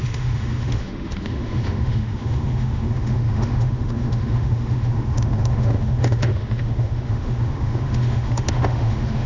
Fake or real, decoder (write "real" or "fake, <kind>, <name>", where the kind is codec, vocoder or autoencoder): fake, autoencoder, DAC-VAE